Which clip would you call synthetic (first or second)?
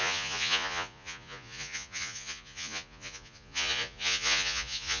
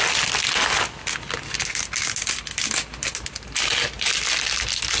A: first